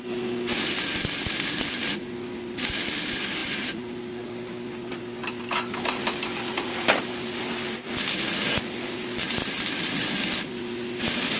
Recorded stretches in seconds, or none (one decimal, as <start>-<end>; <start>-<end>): 0.0-11.4